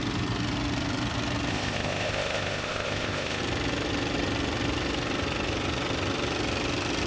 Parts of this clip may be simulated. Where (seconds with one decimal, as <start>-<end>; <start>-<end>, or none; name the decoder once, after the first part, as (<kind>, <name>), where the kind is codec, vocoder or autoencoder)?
1.5-3.4 (codec, ZipCodec)